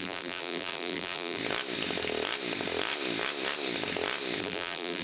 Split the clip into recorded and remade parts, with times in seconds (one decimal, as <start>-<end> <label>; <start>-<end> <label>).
0.0-1.4 remade; 1.4-4.4 recorded; 4.4-5.0 remade